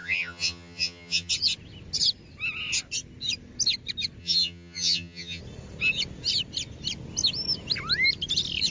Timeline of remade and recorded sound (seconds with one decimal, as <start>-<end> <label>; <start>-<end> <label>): 0.0-1.3 remade; 1.3-4.2 recorded; 4.2-5.4 remade; 5.4-8.7 recorded